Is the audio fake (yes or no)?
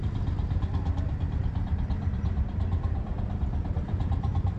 no